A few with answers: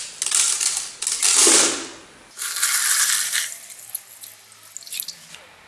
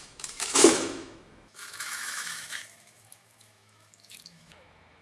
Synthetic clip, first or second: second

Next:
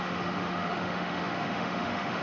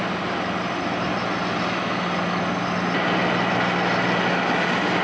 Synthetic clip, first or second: first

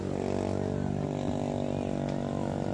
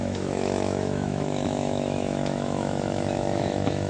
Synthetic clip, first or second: second